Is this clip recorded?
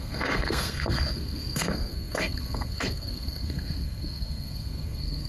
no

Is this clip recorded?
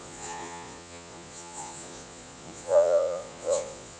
no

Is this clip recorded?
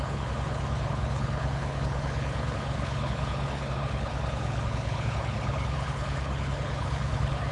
no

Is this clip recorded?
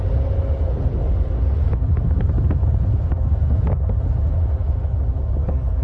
yes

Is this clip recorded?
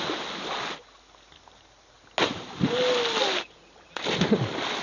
yes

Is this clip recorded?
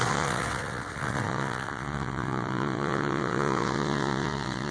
no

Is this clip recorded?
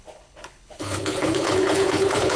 no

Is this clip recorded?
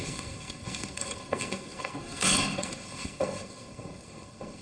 no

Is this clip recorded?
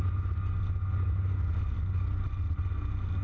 yes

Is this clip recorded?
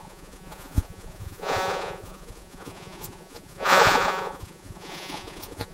no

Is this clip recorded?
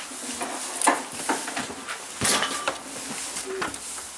yes